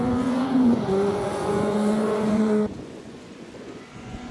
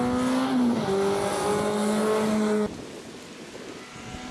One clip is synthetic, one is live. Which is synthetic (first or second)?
first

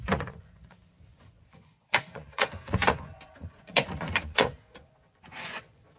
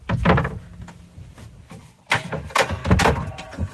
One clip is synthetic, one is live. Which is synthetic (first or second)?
first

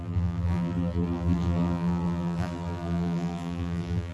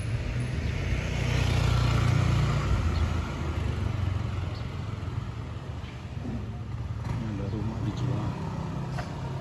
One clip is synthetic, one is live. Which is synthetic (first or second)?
first